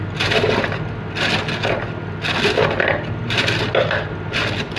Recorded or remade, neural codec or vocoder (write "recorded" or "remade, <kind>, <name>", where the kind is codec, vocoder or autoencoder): recorded